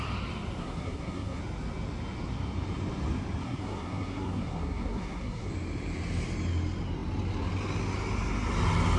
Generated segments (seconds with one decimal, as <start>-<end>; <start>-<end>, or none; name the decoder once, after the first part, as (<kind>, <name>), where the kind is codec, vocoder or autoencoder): 0.6-1.4 (codec, SNAC); 3.4-5.5